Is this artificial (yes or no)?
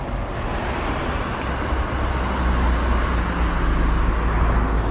no